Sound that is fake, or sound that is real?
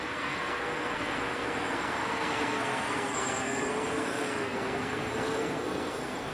fake